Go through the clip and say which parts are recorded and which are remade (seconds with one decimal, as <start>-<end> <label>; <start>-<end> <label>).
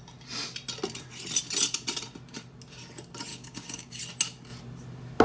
0.0-3.3 recorded; 3.3-4.0 remade; 4.0-5.2 recorded